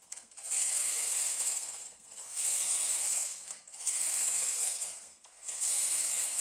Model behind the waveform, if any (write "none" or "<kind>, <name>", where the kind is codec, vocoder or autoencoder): codec, SNAC